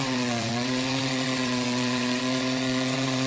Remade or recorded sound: remade